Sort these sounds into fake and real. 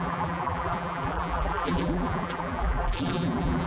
fake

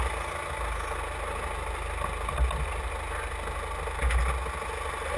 real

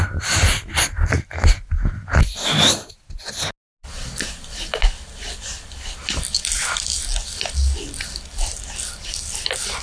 real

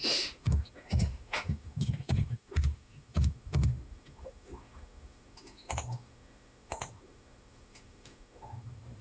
fake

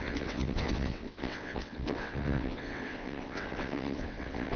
fake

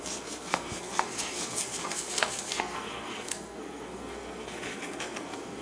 fake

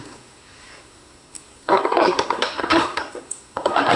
fake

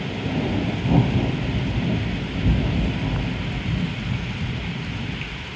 real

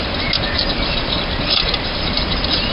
real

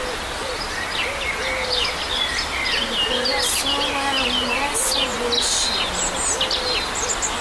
real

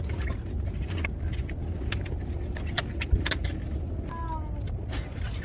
real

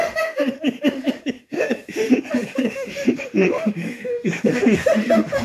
fake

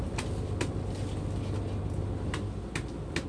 real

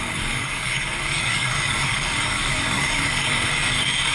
fake